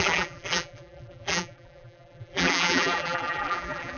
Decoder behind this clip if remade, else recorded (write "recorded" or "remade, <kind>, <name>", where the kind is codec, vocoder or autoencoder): remade, vocoder, BigVGAN v2